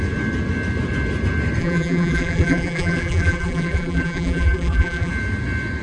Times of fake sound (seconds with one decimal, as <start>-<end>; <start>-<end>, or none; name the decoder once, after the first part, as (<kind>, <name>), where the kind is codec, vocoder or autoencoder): 1.6-5.1 (vocoder, BigVGAN v2)